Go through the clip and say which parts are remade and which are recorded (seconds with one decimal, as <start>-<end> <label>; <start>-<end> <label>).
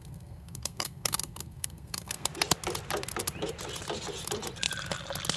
0.0-2.3 remade; 2.3-5.4 recorded